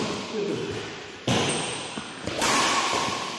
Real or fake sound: real